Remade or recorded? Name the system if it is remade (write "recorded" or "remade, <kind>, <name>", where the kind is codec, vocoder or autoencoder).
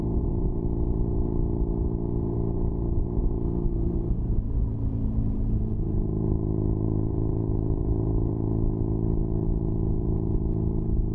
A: remade, vocoder, BigVGAN v2